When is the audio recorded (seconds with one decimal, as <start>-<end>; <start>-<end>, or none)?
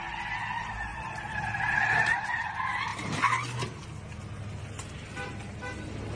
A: 0.0-0.9; 1.6-6.2